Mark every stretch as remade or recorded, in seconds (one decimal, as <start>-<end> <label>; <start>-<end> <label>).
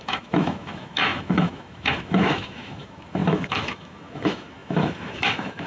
0.0-5.7 remade